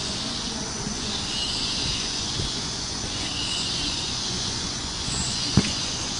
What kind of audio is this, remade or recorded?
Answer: remade